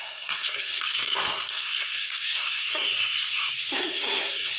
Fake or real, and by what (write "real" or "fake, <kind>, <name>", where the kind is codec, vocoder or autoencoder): fake, codec, SNAC